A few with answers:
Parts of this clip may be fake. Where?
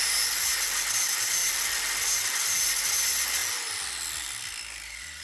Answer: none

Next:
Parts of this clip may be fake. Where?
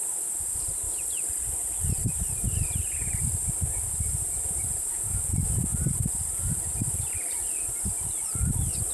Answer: 2.0-5.3 (vocoder, BigVGAN v2)